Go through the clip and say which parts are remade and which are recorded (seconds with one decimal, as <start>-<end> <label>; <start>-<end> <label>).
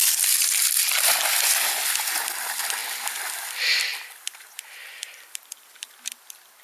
0.0-0.6 remade; 0.6-2.8 recorded; 2.8-3.5 remade; 3.5-3.9 recorded; 3.9-6.6 remade